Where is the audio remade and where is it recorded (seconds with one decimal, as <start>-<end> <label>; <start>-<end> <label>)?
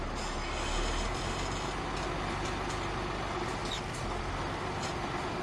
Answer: 0.0-5.4 recorded